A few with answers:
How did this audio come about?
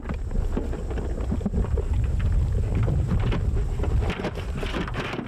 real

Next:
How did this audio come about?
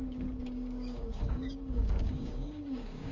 fake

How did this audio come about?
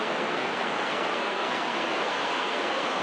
fake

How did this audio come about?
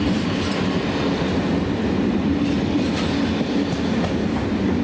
real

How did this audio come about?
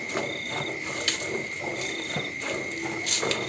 real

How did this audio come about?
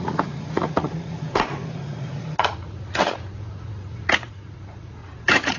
fake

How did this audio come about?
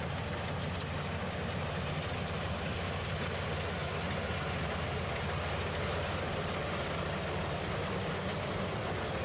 real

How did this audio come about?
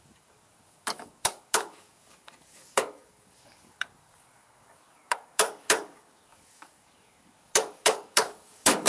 fake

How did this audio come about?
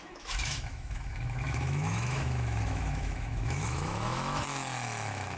fake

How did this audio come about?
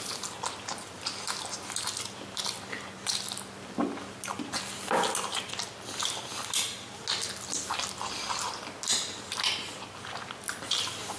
real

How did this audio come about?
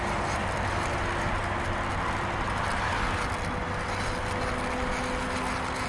real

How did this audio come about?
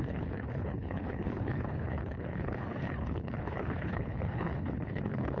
fake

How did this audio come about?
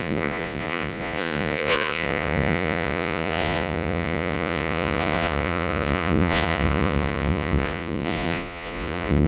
fake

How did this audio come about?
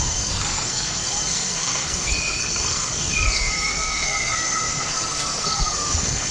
fake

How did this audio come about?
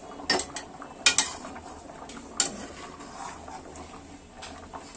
real